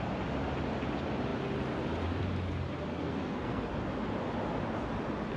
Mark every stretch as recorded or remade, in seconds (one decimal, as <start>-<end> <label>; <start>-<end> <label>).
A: 0.0-2.9 recorded; 2.9-3.7 remade; 3.7-5.4 recorded